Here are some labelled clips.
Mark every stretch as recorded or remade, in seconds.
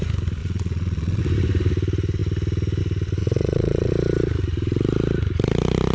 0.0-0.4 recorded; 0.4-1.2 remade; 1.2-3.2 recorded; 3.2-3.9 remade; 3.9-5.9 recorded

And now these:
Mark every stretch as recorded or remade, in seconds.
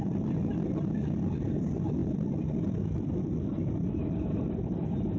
0.0-5.2 recorded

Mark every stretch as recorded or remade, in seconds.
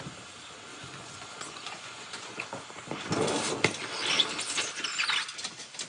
0.0-0.7 recorded; 0.7-2.4 remade; 2.4-5.9 recorded